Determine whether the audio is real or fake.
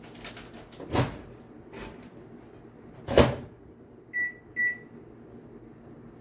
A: real